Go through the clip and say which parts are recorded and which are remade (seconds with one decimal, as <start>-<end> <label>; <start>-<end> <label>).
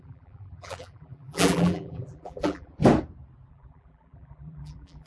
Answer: 0.0-2.7 remade; 2.7-3.5 recorded; 3.5-5.1 remade